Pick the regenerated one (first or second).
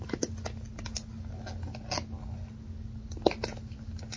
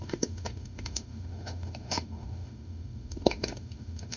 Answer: second